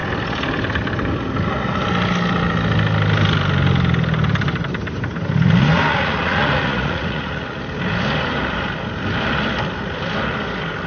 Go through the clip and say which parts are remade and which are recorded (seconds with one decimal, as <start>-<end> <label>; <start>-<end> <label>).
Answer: 0.0-5.9 recorded; 5.9-7.6 remade; 7.6-10.9 recorded